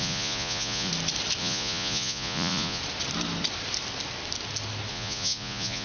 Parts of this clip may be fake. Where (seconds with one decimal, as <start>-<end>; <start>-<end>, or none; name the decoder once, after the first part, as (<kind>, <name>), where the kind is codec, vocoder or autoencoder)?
0.0-0.9 (vocoder, Vocos); 1.4-2.8; 4.9-5.8